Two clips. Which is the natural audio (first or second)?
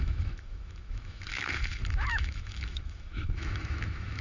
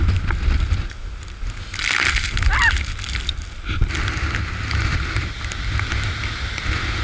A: second